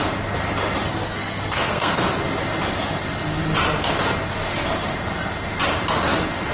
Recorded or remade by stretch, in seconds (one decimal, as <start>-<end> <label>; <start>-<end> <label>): 0.0-0.9 recorded; 0.9-2.0 remade; 2.0-6.5 recorded